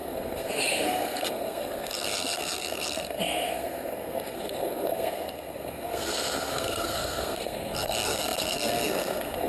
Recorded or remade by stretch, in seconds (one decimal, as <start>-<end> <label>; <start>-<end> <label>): 0.0-9.5 remade